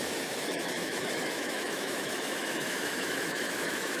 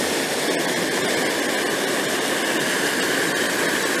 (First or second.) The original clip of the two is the second